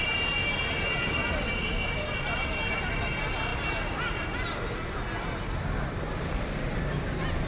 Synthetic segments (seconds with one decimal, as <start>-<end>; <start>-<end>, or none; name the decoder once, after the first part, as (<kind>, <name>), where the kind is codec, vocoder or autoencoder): none